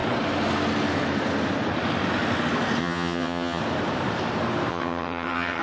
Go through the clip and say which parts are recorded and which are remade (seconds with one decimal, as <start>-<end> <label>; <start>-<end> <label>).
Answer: 0.0-2.8 recorded; 2.8-3.6 remade; 3.6-4.7 recorded; 4.7-5.6 remade